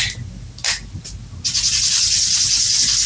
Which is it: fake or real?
real